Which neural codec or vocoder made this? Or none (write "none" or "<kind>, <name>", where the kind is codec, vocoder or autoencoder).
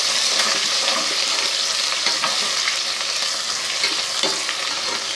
none